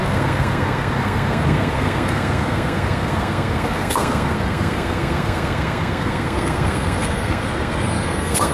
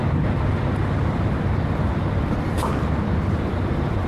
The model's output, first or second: first